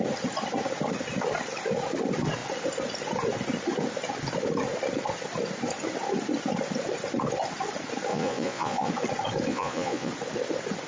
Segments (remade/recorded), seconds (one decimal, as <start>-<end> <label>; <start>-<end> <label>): 0.0-8.1 recorded; 8.1-8.9 remade; 8.9-9.5 recorded; 9.5-10.1 remade; 10.1-10.9 recorded